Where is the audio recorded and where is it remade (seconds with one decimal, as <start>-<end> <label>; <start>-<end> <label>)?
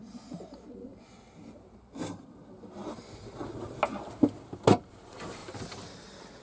0.0-6.4 recorded